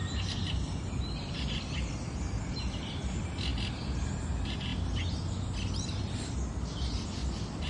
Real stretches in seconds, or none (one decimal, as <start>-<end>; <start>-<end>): 0.0-7.7